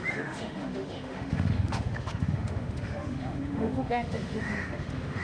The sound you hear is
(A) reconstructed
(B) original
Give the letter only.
A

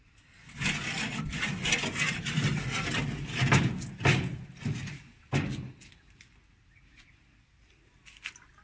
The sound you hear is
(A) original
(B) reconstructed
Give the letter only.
A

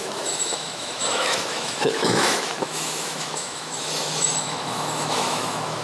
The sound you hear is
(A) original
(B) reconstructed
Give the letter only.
B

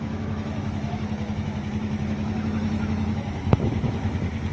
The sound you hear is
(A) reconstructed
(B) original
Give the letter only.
A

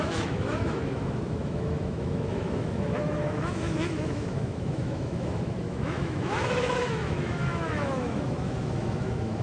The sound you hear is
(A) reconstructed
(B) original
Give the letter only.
A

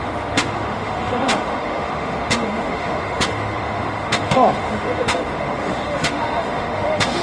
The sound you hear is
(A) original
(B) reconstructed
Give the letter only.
B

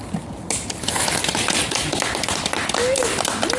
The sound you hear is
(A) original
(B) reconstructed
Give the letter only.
A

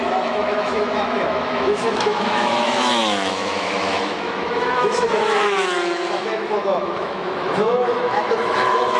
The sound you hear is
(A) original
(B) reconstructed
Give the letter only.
B